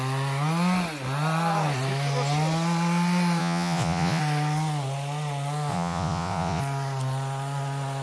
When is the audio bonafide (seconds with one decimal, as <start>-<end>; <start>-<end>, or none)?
0.0-3.4; 4.2-5.7; 6.6-8.0